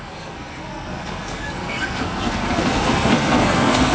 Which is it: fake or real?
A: fake